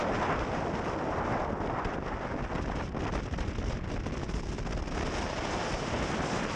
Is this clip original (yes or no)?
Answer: yes